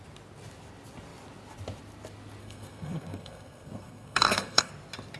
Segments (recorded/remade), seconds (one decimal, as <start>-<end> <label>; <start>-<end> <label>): 0.0-2.4 recorded; 2.4-4.7 remade; 4.7-5.2 recorded